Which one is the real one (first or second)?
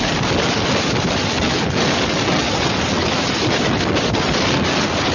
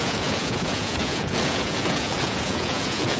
first